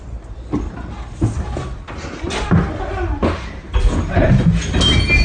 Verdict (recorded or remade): recorded